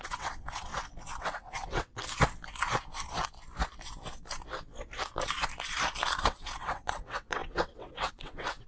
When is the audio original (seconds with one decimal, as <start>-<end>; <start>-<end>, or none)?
0.7-1.2; 2.0-6.2